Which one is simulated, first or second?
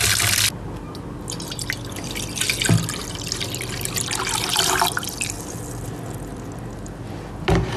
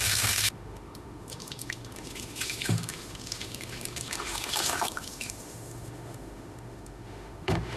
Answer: second